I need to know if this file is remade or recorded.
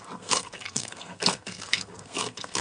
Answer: remade